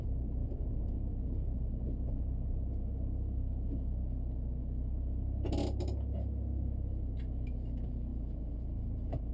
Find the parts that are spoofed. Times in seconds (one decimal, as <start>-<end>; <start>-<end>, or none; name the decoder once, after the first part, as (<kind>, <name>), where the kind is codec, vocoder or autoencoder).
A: 0.4-1.0 (vocoder, Vocos); 8.1-9.3